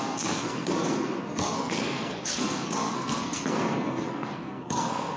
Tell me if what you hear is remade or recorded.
remade